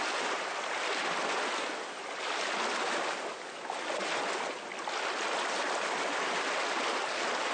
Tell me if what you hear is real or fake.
real